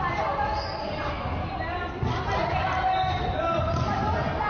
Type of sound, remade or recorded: recorded